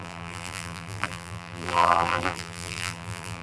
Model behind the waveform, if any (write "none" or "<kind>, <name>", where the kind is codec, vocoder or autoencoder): vocoder, BigVGAN v2